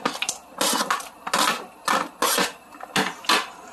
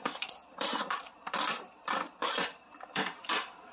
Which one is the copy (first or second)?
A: second